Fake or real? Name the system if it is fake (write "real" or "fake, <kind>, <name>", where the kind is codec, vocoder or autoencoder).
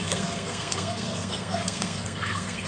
fake, codec, SNAC